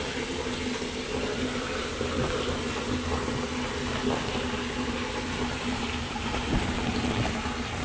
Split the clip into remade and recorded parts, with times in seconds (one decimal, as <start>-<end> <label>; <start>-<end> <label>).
0.0-1.1 recorded; 1.1-2.6 remade; 2.6-4.2 recorded; 4.2-7.0 remade; 7.0-7.8 recorded